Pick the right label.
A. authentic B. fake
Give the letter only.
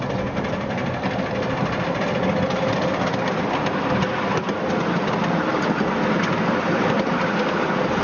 A